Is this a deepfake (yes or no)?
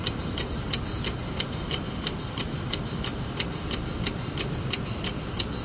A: no